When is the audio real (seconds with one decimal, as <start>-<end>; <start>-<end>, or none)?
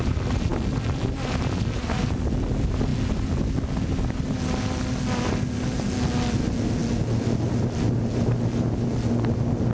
0.0-9.7